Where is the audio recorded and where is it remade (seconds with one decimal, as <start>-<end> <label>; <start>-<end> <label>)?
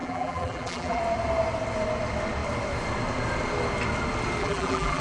0.0-1.0 remade; 1.0-4.4 recorded; 4.4-5.0 remade